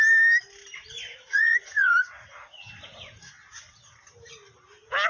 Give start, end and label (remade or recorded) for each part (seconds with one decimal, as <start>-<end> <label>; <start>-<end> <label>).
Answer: 0.0-1.1 recorded; 1.1-3.0 remade; 3.0-5.1 recorded